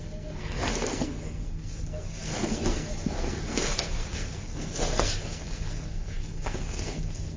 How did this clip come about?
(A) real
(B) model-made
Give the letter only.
B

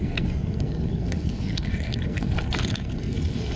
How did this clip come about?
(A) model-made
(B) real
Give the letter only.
A